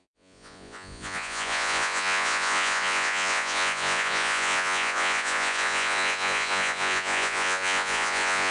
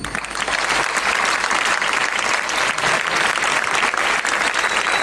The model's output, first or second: first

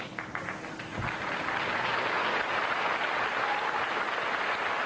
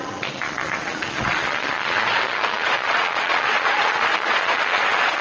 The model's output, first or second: second